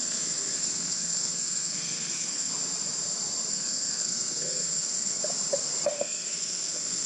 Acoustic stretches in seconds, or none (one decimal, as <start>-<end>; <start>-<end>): 2.5-3.5; 5.2-6.0